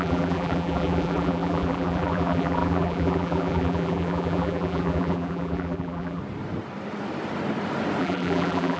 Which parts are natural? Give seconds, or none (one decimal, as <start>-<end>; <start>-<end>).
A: 6.2-8.0